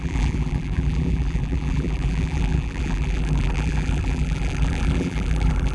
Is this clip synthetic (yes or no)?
yes